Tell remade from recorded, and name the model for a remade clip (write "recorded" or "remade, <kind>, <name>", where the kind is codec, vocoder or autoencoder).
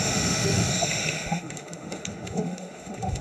remade, autoencoder, DAC-VAE